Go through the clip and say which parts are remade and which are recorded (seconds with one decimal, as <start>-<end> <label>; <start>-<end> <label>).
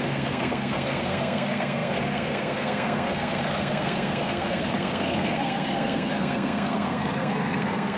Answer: 0.0-8.0 remade